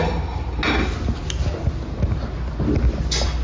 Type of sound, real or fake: real